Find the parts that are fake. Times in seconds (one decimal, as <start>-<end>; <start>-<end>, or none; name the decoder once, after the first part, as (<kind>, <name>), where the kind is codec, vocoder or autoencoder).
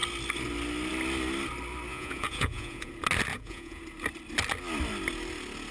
1.9-2.9 (vocoder, Vocos); 3.3-3.8